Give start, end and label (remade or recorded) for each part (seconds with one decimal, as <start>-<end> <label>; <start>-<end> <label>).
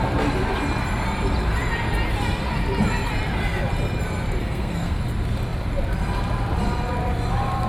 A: 0.0-4.4 recorded; 4.4-5.0 remade; 5.0-7.7 recorded